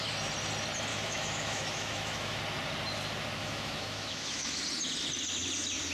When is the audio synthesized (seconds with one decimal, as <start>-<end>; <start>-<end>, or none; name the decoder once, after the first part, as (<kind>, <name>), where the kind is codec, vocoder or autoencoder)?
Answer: 0.9-2.4 (autoencoder, DAC-VAE); 3.4-4.6

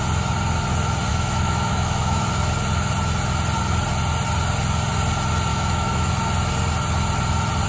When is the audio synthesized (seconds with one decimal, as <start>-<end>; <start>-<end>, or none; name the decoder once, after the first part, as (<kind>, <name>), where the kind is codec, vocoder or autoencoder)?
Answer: 1.1-2.2 (autoencoder, DAC-VAE); 5.5-6.1